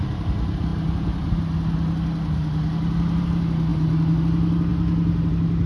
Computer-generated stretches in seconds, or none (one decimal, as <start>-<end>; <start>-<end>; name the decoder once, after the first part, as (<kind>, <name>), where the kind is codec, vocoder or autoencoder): none